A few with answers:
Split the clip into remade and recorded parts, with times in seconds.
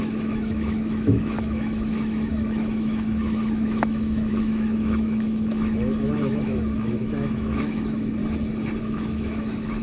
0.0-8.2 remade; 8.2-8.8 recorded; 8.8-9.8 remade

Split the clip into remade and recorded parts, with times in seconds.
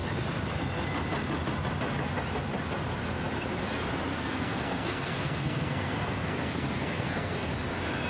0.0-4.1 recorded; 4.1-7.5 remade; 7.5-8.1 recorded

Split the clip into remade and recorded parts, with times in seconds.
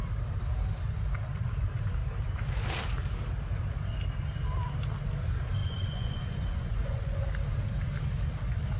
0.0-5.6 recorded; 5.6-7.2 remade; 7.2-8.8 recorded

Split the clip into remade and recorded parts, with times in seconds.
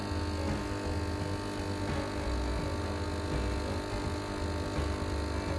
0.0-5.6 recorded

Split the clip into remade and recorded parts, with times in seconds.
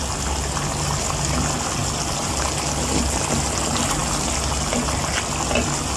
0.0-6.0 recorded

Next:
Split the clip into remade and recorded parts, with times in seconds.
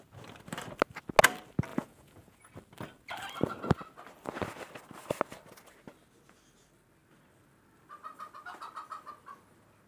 0.0-1.7 recorded; 1.7-2.4 remade; 2.4-9.9 recorded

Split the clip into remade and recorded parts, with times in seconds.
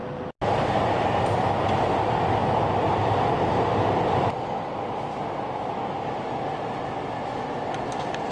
0.0-8.3 recorded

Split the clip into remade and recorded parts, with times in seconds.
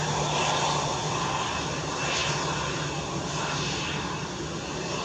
0.0-5.0 recorded